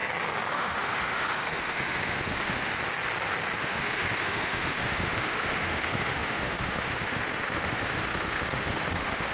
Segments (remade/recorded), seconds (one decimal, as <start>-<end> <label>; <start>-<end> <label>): 0.0-0.5 recorded; 0.5-2.7 remade; 2.7-3.6 recorded; 3.6-9.3 remade